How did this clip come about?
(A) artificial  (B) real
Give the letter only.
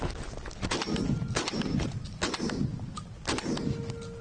B